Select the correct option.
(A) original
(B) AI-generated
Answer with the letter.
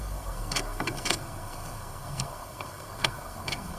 B